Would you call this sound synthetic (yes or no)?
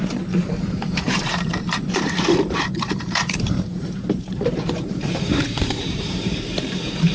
yes